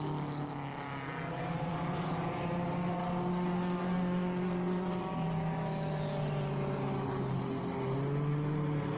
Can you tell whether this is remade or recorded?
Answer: recorded